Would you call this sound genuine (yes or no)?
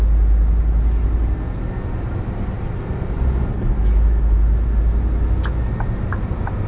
yes